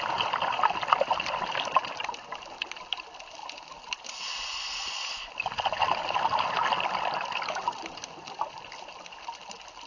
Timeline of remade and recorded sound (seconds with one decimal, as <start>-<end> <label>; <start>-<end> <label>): 0.0-9.9 recorded